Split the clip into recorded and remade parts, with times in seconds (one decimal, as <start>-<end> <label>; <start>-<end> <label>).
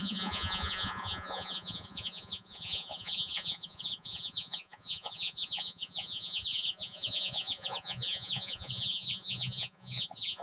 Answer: 0.0-10.4 remade